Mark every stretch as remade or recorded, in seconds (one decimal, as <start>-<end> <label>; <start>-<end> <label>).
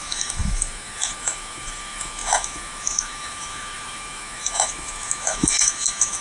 0.0-6.2 remade